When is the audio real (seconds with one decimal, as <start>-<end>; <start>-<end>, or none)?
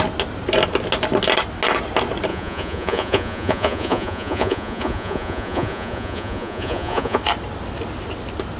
0.0-2.3; 7.2-8.6